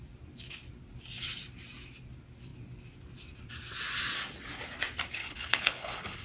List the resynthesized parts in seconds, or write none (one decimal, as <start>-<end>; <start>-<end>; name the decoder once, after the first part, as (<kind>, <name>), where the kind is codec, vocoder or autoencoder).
5.2-6.2 (codec, HILCodec)